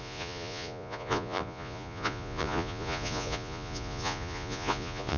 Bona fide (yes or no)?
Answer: no